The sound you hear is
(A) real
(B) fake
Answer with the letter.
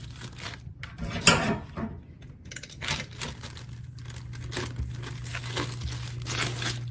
A